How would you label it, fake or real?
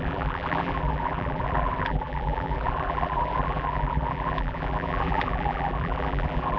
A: fake